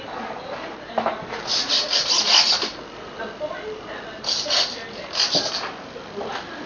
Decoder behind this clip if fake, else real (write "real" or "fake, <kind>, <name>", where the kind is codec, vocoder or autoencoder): real